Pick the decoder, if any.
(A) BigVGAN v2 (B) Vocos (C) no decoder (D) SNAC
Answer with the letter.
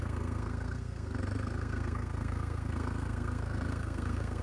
D